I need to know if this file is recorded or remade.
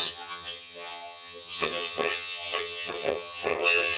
remade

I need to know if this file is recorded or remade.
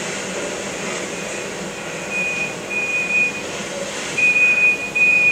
remade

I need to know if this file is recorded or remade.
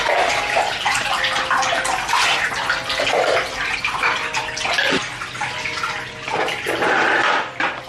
recorded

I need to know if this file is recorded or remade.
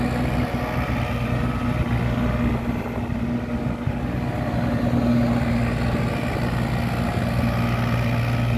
recorded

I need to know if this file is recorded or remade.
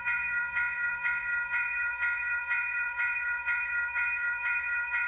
remade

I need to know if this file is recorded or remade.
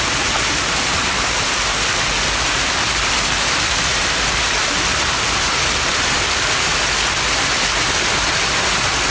recorded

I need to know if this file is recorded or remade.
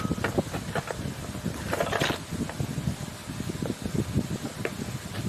recorded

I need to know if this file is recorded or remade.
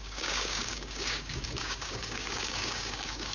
remade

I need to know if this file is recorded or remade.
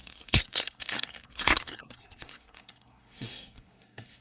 remade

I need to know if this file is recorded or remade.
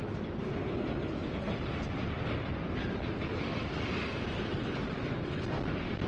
recorded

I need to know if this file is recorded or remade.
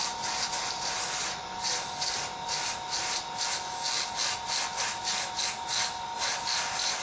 recorded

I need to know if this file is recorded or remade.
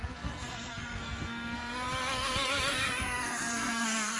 remade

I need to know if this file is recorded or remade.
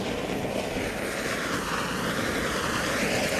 recorded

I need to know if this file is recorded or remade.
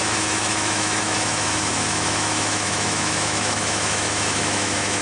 remade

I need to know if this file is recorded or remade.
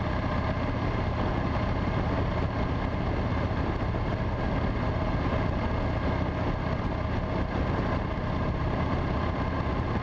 recorded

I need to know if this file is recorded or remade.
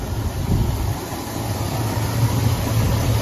recorded